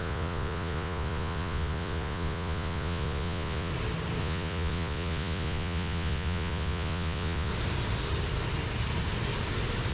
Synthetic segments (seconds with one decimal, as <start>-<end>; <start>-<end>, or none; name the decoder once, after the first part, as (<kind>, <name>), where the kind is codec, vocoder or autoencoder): 0.0-3.7 (vocoder, Vocos); 4.2-7.5